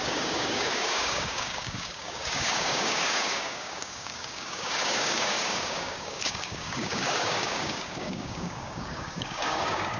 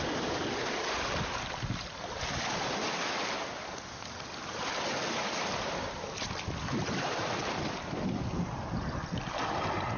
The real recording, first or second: second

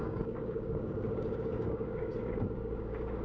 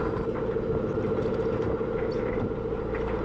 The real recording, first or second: second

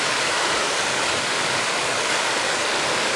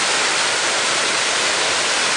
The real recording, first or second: second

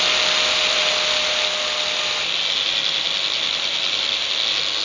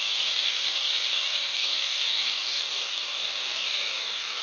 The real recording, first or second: first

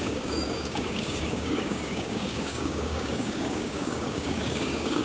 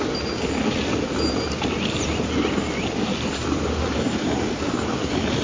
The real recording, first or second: second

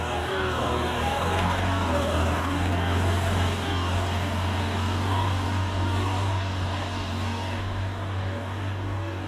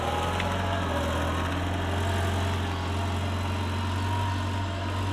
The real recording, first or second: second